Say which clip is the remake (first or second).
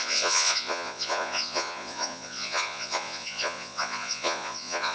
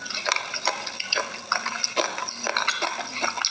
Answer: first